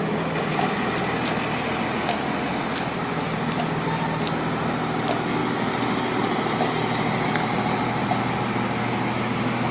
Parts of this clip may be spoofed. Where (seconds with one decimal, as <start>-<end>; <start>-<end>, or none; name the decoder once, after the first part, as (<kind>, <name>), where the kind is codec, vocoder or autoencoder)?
none

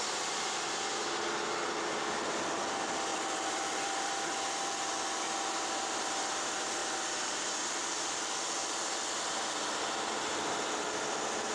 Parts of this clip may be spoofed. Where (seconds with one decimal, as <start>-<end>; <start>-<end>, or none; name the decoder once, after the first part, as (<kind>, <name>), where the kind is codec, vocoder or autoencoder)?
3.1-5.0 (vocoder, BigVGAN v2)

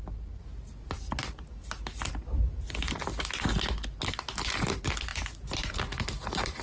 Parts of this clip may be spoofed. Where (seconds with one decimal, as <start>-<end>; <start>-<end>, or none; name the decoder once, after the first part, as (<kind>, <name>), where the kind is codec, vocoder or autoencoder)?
none

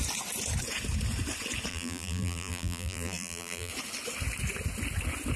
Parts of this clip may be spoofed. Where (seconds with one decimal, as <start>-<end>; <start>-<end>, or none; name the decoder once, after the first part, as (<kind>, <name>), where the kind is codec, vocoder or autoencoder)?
1.7-3.7 (vocoder, BigVGAN v2)

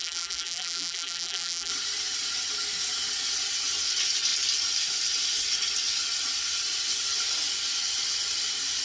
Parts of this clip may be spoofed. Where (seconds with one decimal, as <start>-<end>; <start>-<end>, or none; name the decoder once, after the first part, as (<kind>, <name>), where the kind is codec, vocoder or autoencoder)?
0.0-1.7 (vocoder, BigVGAN v2)

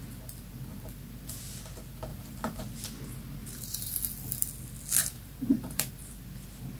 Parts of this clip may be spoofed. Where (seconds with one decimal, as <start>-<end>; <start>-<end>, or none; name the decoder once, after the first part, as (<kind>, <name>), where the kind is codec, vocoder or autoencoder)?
2.1-2.6 (vocoder, BigVGAN v2); 3.4-4.0; 5.0-5.9